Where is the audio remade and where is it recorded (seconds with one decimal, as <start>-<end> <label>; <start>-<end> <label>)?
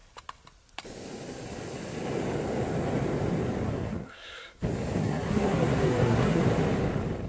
0.0-3.7 recorded; 3.7-4.6 remade; 4.6-5.0 recorded; 5.0-6.4 remade; 6.4-7.3 recorded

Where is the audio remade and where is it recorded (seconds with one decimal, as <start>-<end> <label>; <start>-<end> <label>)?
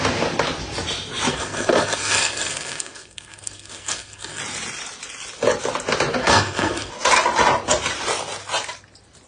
0.0-1.3 recorded; 1.3-4.4 remade; 4.4-6.2 recorded; 6.2-6.9 remade; 6.9-9.3 recorded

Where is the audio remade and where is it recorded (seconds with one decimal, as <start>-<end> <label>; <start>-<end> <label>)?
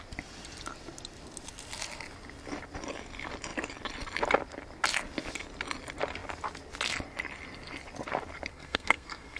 0.0-8.5 recorded; 8.5-9.4 remade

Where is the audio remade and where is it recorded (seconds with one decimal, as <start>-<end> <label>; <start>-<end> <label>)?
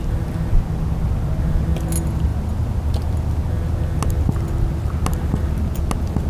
0.0-6.3 recorded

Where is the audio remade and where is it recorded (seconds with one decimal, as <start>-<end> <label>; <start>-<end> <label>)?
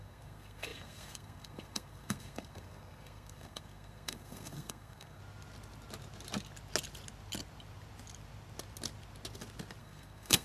0.0-5.2 remade; 5.2-9.8 recorded; 9.8-10.4 remade